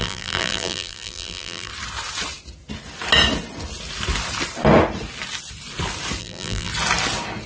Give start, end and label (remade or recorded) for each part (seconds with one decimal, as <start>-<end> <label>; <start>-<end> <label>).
0.0-1.7 remade; 1.7-6.2 recorded; 6.2-6.7 remade; 6.7-7.5 recorded